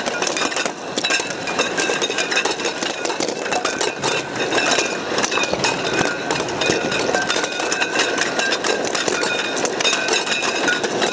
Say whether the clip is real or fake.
real